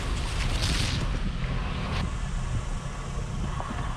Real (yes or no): yes